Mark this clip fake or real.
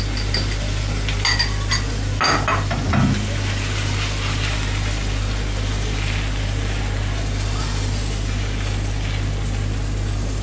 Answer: real